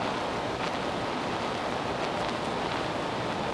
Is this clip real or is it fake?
real